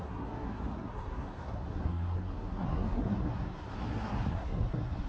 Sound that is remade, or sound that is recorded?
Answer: remade